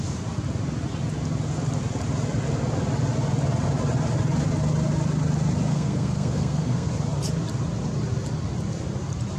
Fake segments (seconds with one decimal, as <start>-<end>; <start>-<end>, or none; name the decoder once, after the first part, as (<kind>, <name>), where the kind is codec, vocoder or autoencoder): 5.7-6.9 (codec, SNAC)